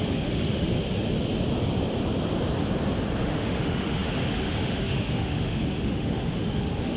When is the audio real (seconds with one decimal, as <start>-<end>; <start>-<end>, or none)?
0.7-3.2